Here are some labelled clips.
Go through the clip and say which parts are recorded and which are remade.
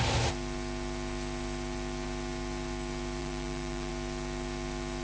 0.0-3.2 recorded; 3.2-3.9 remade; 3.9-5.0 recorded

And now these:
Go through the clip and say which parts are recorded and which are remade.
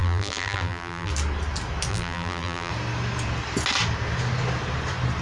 0.0-1.1 remade; 1.1-1.9 recorded; 1.9-2.7 remade; 2.7-5.2 recorded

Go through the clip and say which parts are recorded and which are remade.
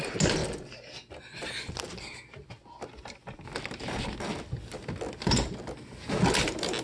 0.0-6.8 recorded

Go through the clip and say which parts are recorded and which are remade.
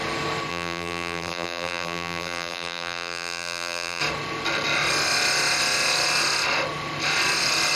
0.0-0.5 recorded; 0.5-4.0 remade; 4.0-7.8 recorded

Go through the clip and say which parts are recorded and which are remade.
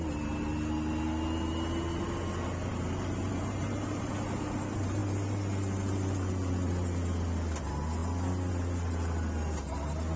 0.0-2.7 recorded; 2.7-4.1 remade; 4.1-10.2 recorded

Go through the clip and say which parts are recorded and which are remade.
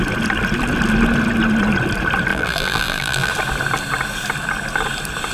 0.0-2.3 recorded; 2.3-3.3 remade; 3.3-5.3 recorded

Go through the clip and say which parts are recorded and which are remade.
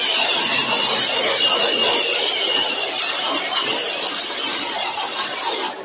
0.0-5.8 remade